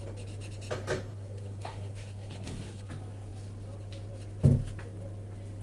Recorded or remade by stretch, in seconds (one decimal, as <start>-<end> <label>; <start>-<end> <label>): 0.0-1.1 recorded; 1.1-2.9 remade; 2.9-5.6 recorded